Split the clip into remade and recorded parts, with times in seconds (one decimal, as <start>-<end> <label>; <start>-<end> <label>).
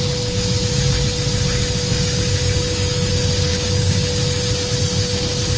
0.0-1.9 recorded; 1.9-3.1 remade; 3.1-3.5 recorded; 3.5-4.1 remade; 4.1-5.6 recorded